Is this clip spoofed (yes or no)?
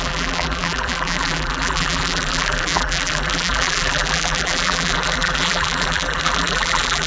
yes